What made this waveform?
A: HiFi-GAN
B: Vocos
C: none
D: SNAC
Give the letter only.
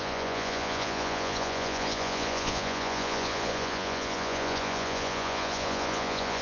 B